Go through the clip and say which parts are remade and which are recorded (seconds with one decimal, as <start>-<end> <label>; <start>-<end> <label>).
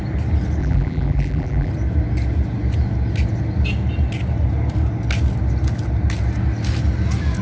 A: 0.0-0.6 recorded; 0.6-1.7 remade; 1.7-7.4 recorded